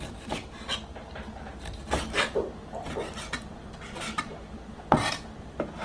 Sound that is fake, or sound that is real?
real